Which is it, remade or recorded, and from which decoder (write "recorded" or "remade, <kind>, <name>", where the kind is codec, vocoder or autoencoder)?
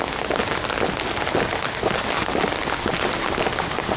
recorded